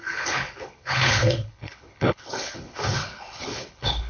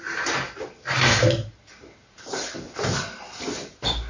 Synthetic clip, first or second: first